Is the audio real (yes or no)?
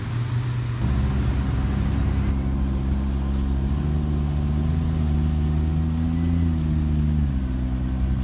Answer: yes